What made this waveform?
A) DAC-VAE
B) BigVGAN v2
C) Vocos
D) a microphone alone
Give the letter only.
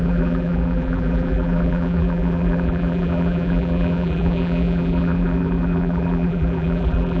B